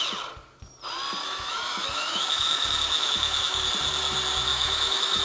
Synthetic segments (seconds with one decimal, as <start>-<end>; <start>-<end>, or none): 1.2-3.7; 4.5-5.2